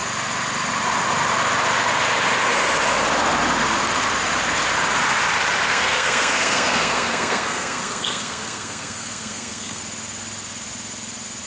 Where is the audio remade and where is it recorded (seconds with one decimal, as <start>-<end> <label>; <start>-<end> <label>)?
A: 0.0-5.7 recorded; 5.7-9.8 remade; 9.8-11.5 recorded